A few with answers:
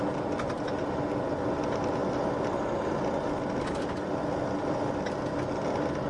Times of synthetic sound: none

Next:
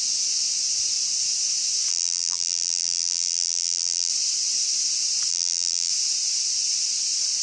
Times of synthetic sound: 1.9-4.1 (vocoder, BigVGAN v2); 5.3-5.9

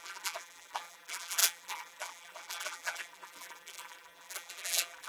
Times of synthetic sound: 0.0-5.1 (vocoder, BigVGAN v2)